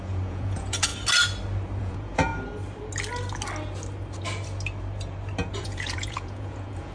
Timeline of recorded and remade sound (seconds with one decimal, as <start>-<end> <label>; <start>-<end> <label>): 0.0-0.9 remade; 0.9-1.8 recorded; 1.8-2.3 remade; 2.3-5.6 recorded; 5.6-6.9 remade